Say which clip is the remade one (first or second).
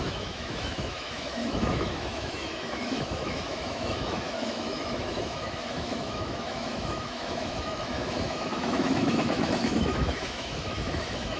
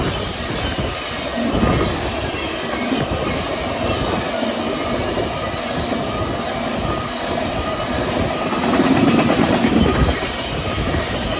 first